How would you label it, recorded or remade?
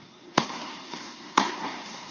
remade